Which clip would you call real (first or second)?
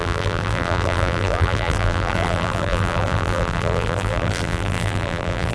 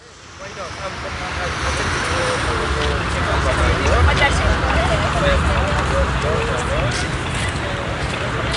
second